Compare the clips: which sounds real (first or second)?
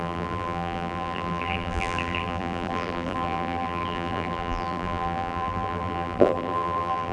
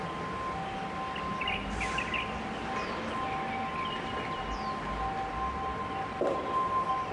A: second